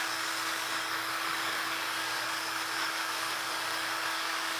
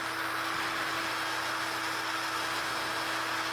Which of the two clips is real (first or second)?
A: second